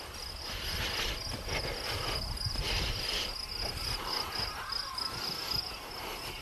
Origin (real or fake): real